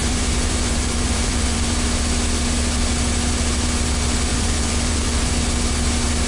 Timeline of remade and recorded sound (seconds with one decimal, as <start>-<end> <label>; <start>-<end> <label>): 0.0-1.7 remade; 1.7-4.3 recorded; 4.3-5.3 remade; 5.3-6.3 recorded